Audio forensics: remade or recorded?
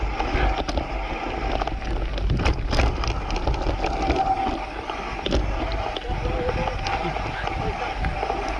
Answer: recorded